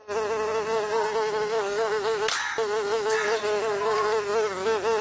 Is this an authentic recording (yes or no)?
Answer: yes